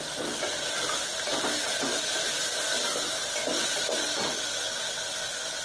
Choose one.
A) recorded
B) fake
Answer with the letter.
A